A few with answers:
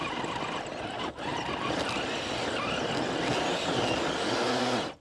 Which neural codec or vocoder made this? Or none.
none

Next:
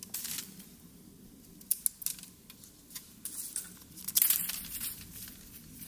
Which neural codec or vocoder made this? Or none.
none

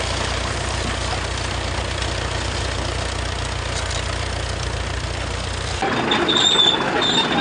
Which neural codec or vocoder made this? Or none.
none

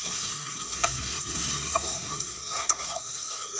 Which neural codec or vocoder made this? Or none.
codec, SNAC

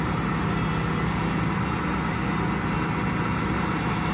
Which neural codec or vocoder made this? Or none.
none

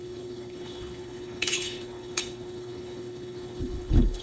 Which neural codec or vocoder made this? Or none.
codec, HILCodec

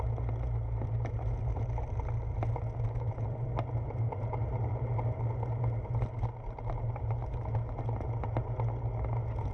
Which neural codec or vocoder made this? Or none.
none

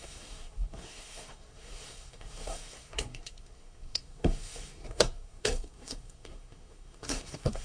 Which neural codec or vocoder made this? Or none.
codec, SNAC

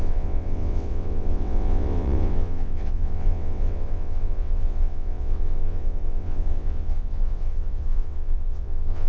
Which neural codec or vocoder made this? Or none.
vocoder, WaveNeXt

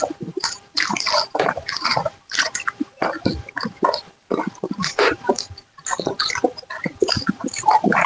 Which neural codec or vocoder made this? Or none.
vocoder, BigVGAN v2